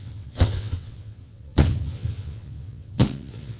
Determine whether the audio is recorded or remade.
remade